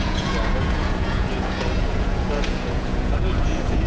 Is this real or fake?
fake